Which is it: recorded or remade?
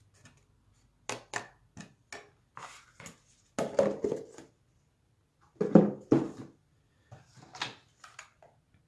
recorded